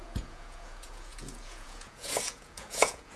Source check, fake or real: fake